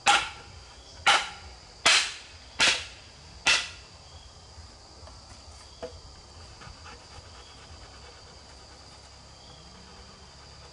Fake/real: real